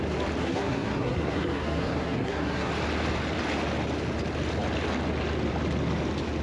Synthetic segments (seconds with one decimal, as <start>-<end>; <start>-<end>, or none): 0.4-2.7